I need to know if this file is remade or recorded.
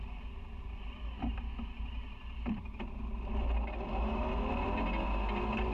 recorded